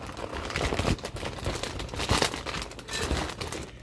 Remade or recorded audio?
recorded